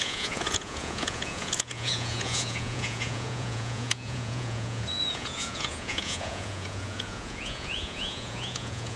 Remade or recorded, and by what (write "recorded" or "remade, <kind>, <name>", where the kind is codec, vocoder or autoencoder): remade, vocoder, Vocos